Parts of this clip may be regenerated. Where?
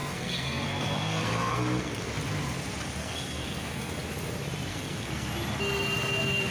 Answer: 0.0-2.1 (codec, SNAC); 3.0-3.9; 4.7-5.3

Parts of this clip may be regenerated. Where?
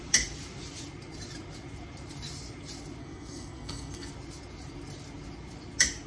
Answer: 3.0-4.1 (codec, SNAC)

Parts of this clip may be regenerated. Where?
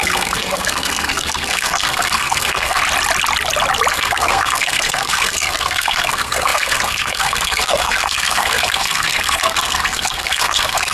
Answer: 0.0-2.8 (codec, SNAC); 3.9-10.9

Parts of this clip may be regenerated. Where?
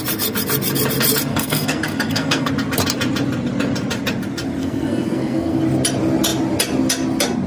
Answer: 1.3-2.5 (codec, SNAC); 4.6-5.6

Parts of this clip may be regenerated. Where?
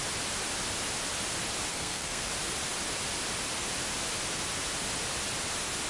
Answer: 1.7-2.3 (codec, SNAC)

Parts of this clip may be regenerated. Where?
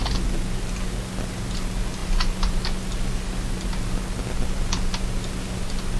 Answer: none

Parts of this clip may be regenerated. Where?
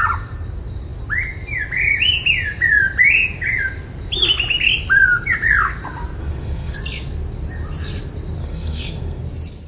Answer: 6.2-6.8 (codec, SNAC); 8.4-9.2